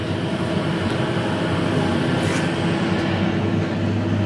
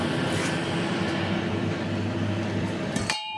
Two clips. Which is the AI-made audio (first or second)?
second